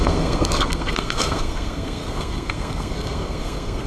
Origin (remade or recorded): remade